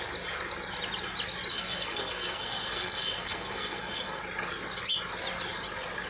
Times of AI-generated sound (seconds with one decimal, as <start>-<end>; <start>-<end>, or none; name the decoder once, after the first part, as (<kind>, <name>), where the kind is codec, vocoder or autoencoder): 1.5-4.2 (codec, SNAC)